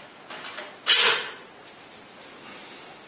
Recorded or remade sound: recorded